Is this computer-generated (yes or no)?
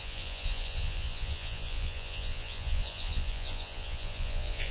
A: yes